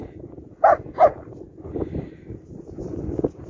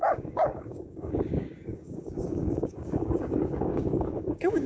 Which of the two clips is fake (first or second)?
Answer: second